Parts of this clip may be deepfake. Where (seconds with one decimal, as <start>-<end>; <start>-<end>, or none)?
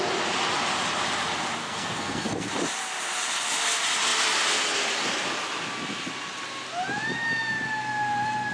1.6-2.5